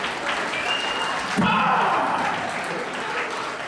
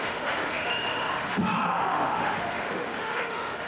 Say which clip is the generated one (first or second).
second